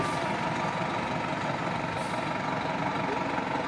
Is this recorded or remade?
recorded